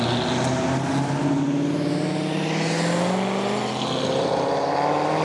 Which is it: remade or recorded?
recorded